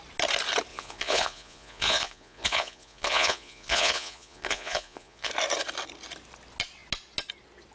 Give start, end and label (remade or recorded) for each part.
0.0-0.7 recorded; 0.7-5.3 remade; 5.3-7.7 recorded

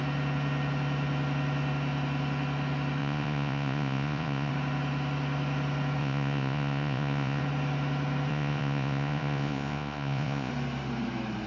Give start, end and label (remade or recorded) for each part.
0.0-3.0 recorded; 3.0-4.5 remade; 4.5-6.0 recorded; 6.0-7.4 remade; 7.4-8.3 recorded; 8.3-10.5 remade; 10.5-11.5 recorded